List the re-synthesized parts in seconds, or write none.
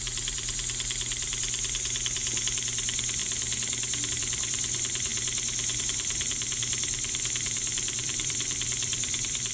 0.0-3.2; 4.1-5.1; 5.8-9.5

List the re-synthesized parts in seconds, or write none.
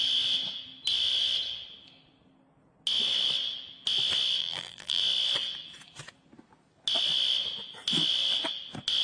4.4-5.0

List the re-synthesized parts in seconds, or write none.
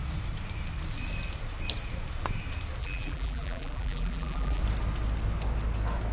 2.8-4.6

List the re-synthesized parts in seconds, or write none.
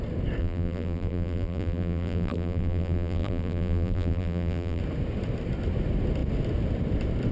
0.4-4.8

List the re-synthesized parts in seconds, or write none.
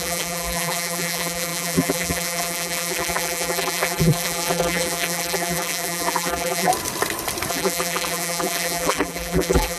0.0-6.7; 7.5-9.8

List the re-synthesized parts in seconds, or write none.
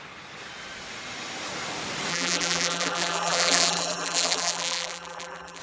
2.1-5.6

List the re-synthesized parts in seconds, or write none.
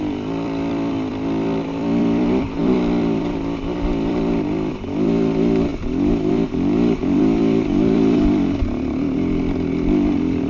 0.0-5.7; 6.3-8.6; 9.7-10.5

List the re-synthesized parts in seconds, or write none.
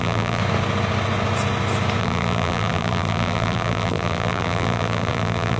0.0-0.4; 2.0-5.6